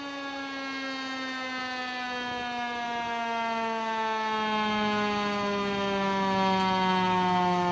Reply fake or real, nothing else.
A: real